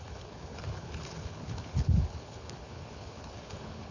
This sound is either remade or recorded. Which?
remade